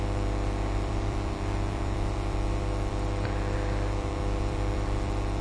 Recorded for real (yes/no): no